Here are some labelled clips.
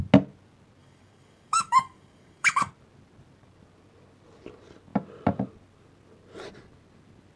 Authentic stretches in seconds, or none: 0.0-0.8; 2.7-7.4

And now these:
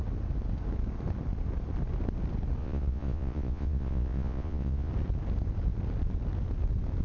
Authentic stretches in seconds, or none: 0.0-2.6; 4.9-7.0

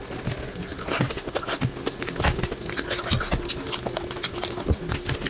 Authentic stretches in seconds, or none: 0.0-5.3